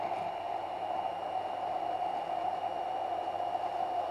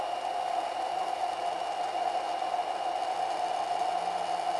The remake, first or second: first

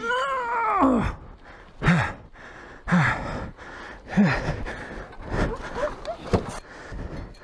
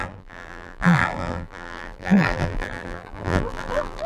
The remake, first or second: second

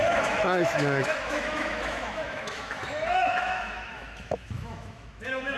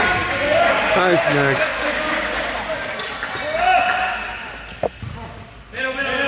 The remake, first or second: first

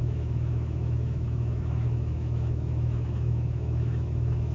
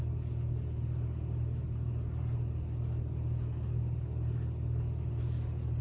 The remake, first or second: first